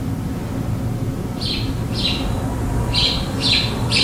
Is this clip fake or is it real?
real